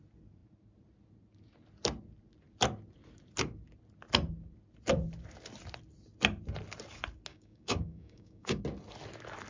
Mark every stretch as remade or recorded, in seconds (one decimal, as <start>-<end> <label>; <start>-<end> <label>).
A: 0.0-7.3 recorded; 7.3-8.6 remade; 8.6-9.5 recorded